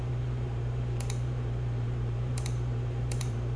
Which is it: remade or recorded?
remade